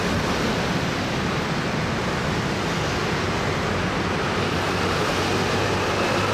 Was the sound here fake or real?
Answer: real